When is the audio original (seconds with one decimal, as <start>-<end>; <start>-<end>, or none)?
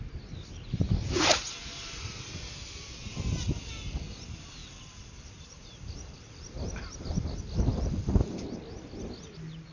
0.0-4.6; 6.3-9.7